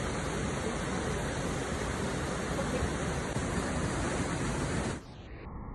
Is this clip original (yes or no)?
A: yes